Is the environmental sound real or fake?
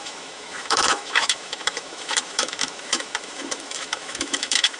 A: fake